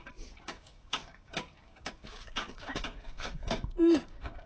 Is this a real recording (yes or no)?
no